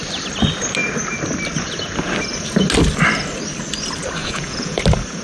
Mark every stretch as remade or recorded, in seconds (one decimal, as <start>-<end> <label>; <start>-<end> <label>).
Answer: 0.0-4.2 recorded; 4.2-4.8 remade; 4.8-5.2 recorded